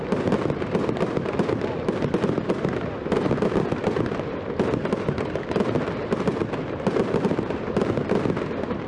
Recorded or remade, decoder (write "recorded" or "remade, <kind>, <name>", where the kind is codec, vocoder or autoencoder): recorded